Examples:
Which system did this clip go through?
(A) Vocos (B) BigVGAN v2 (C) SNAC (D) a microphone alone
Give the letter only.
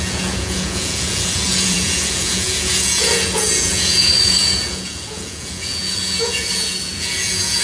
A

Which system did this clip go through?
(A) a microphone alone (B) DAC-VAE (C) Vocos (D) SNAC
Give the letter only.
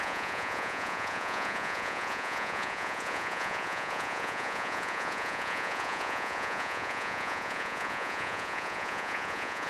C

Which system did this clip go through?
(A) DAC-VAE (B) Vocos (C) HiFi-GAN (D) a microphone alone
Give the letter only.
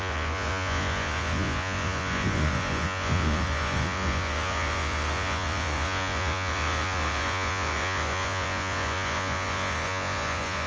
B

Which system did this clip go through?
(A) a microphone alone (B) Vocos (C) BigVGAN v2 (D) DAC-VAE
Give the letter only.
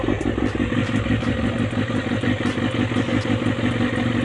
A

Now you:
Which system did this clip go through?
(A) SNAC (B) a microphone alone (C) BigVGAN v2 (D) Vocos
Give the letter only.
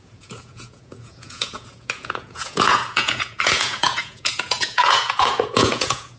D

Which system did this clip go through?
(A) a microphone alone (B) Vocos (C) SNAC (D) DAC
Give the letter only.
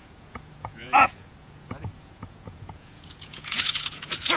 B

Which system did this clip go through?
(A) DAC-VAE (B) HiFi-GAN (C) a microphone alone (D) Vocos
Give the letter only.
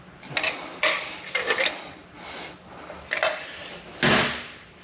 C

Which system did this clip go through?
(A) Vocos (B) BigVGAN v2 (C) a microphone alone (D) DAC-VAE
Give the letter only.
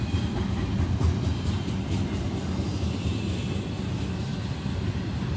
C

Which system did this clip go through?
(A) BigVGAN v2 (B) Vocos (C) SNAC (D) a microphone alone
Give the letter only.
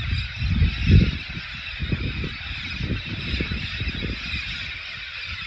D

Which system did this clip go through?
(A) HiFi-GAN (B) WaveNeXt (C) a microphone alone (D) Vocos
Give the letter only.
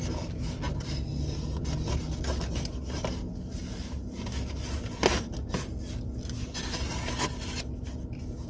C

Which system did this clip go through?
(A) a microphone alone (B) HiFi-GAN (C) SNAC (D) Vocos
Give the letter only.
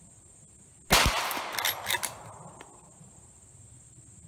A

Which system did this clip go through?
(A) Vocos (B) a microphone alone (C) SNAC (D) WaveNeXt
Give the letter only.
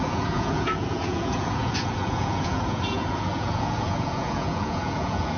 A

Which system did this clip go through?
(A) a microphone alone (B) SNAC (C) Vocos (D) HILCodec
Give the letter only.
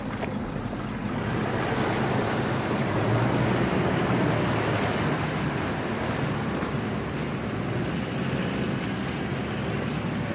A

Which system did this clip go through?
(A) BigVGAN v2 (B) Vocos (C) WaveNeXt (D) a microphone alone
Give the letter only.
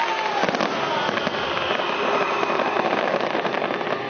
D